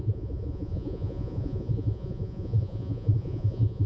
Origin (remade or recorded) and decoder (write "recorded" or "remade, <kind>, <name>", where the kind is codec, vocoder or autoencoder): remade, vocoder, Vocos